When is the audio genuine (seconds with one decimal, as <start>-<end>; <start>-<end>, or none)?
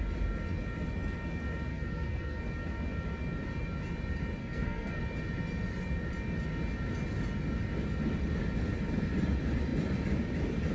0.0-1.7; 2.4-4.4; 5.0-10.7